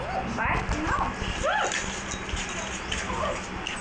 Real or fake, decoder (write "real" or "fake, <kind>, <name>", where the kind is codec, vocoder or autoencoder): real